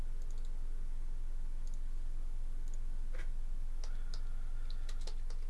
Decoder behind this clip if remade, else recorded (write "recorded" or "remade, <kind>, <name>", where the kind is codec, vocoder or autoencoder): recorded